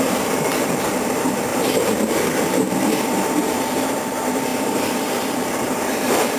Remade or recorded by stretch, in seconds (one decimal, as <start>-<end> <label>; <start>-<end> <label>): 0.0-6.4 remade